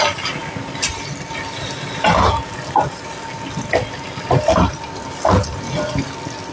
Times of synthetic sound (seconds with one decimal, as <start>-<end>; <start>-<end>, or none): none